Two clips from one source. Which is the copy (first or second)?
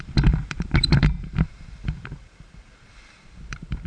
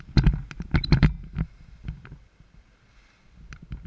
first